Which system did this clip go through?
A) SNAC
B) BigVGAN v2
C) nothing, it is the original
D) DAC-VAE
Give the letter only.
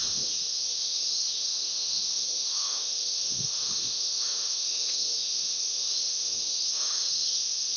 D